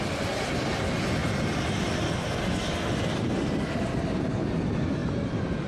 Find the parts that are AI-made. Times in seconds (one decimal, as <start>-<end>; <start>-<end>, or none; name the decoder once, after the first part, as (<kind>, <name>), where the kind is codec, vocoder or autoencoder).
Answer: none